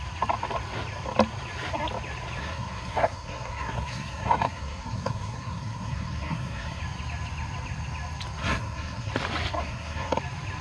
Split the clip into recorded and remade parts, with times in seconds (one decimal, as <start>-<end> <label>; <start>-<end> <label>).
0.0-2.4 recorded; 2.4-6.8 remade; 6.8-8.4 recorded; 8.4-9.1 remade; 9.1-9.6 recorded; 9.6-10.2 remade; 10.2-10.6 recorded